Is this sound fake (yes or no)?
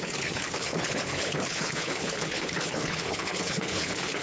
yes